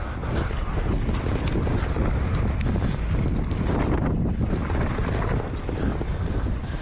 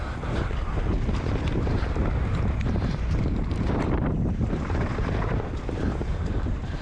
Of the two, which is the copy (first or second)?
second